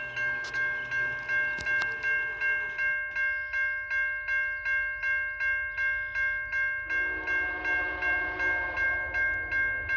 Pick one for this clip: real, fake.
real